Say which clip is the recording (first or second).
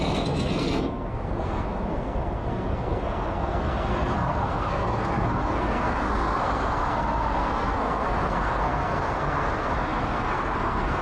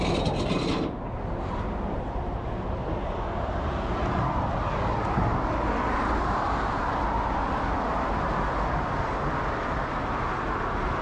second